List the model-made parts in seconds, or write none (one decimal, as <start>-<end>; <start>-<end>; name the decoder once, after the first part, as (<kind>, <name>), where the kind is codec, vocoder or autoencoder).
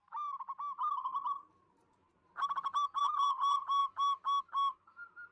none